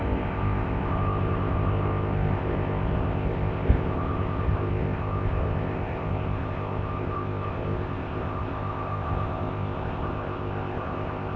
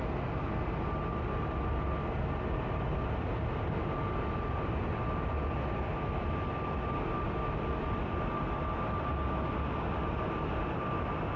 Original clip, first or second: second